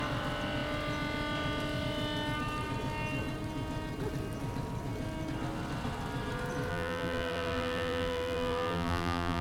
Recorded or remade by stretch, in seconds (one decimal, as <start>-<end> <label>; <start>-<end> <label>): 0.0-6.7 recorded; 6.7-9.4 remade